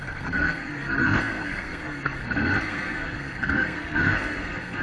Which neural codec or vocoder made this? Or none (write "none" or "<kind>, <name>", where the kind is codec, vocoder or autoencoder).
codec, SNAC